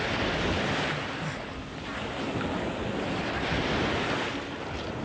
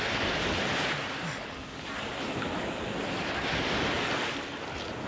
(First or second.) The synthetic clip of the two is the first